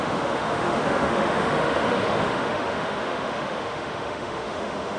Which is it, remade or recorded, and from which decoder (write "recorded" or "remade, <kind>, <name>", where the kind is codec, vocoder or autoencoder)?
remade, autoencoder, DAC-VAE